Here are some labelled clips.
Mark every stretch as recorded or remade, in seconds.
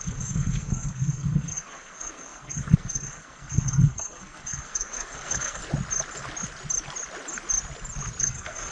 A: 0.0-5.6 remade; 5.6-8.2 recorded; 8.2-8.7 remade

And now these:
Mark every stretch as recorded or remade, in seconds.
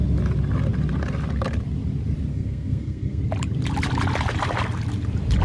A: 0.0-2.3 recorded; 2.3-3.2 remade; 3.2-5.4 recorded